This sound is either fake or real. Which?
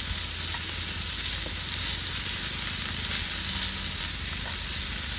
real